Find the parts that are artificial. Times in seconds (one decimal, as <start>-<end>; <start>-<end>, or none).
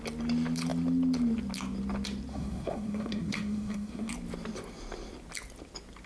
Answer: 2.3-4.1